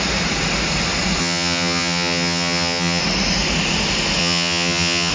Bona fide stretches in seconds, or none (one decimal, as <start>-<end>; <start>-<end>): 0.0-1.2; 3.0-4.2